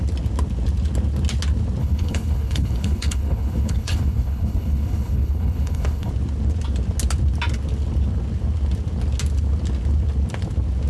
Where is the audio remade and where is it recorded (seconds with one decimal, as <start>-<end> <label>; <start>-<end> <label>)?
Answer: 0.0-1.8 recorded; 1.8-6.1 remade; 6.1-10.9 recorded